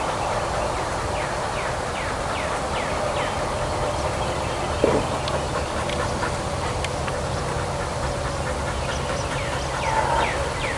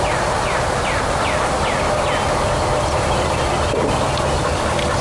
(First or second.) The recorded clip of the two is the second